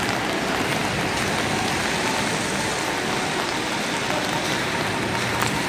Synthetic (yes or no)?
no